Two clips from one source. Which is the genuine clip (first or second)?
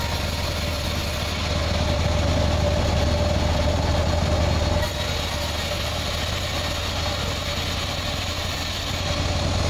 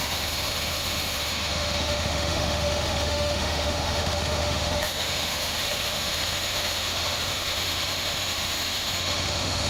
first